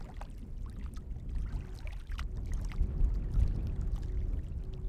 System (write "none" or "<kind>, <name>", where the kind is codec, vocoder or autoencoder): none